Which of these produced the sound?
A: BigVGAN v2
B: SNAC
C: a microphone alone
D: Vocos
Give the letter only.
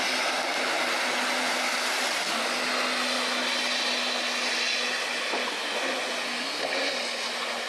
C